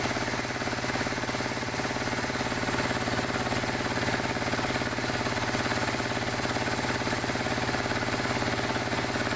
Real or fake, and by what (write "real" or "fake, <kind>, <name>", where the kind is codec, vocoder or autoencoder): real